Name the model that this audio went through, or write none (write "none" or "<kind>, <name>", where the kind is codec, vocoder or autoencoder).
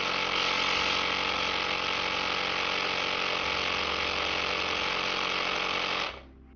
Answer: none